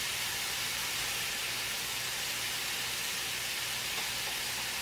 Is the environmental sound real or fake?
real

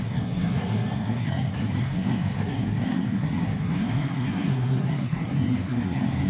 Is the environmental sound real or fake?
fake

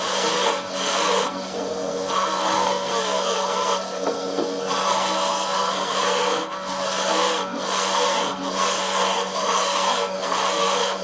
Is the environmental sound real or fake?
fake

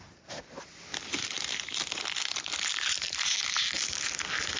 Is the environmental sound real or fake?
real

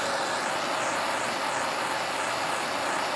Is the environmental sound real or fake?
real